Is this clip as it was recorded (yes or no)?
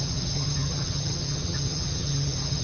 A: no